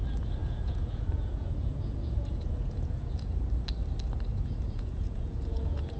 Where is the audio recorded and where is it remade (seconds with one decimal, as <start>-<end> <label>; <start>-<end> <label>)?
0.0-0.4 recorded; 0.4-3.3 remade; 3.3-4.3 recorded; 4.3-6.0 remade